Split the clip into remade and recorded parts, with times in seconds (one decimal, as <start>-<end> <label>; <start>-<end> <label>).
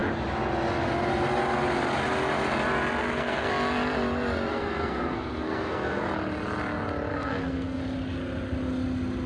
0.0-3.0 recorded; 3.0-3.5 remade; 3.5-4.5 recorded; 4.5-6.0 remade; 6.0-7.1 recorded; 7.1-7.8 remade; 7.8-9.3 recorded